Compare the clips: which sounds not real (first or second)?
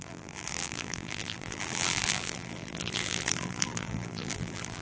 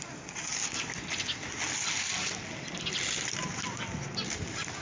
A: first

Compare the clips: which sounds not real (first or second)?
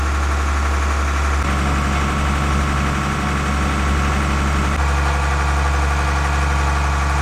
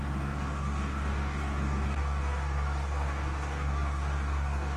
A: second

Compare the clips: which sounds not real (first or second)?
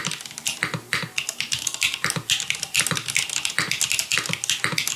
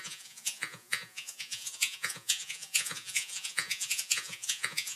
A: second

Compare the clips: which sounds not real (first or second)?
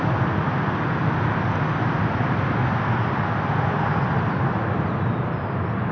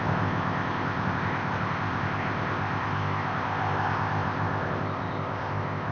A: second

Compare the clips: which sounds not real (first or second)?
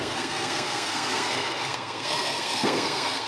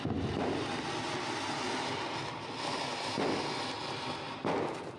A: first